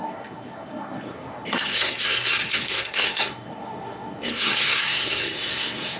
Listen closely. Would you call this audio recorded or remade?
remade